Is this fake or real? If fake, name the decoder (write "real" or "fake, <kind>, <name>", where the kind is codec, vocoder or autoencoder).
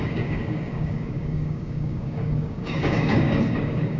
fake, codec, DAC